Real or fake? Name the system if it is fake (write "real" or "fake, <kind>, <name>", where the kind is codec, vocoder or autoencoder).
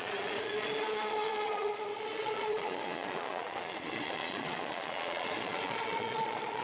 fake, vocoder, Vocos